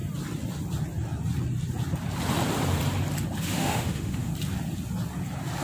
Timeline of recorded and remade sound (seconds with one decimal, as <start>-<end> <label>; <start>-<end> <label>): 0.0-3.4 recorded; 3.4-4.3 remade; 4.3-5.6 recorded